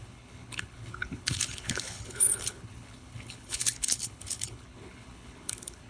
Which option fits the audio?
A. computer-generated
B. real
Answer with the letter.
A